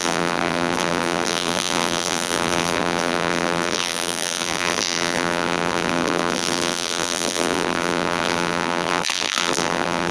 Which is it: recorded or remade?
remade